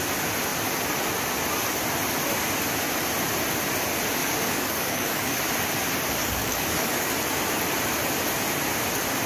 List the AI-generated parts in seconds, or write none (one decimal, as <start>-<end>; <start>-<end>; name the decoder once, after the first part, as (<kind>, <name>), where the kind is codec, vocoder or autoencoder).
4.2-5.4 (codec, DAC); 6.2-7.1